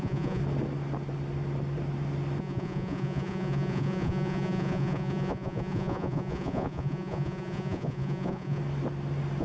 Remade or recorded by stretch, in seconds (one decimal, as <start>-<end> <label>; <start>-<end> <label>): 0.0-0.4 remade; 0.4-2.4 recorded; 2.4-8.6 remade; 8.6-9.4 recorded